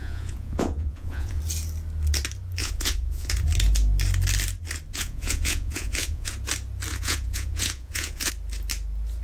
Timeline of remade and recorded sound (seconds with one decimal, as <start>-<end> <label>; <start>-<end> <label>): 0.0-1.4 remade; 1.4-2.6 recorded; 2.6-3.3 remade; 3.3-4.9 recorded; 4.9-6.3 remade; 6.3-6.9 recorded; 6.9-8.3 remade; 8.3-9.2 recorded

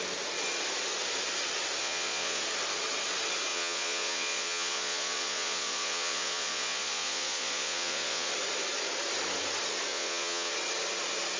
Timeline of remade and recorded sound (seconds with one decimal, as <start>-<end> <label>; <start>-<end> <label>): 0.0-1.8 recorded; 1.8-2.4 remade; 2.4-3.5 recorded; 3.5-8.3 remade; 8.3-9.9 recorded; 9.9-10.5 remade; 10.5-11.4 recorded

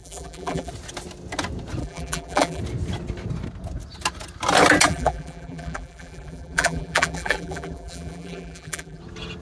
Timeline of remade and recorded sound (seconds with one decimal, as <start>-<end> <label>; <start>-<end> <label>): 0.0-0.7 remade; 0.7-1.8 recorded; 1.8-2.6 remade; 2.6-4.9 recorded; 4.9-9.0 remade; 9.0-9.4 recorded

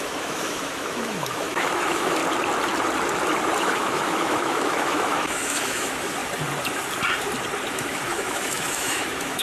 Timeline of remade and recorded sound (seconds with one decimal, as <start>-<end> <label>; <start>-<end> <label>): 0.0-2.2 remade; 2.2-3.6 recorded; 3.6-6.2 remade; 6.2-7.7 recorded; 7.7-9.4 remade

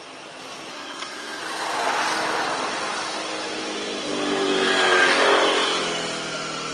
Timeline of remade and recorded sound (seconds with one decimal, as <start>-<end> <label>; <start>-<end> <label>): 0.0-0.7 recorded; 0.7-1.4 remade; 1.4-6.7 recorded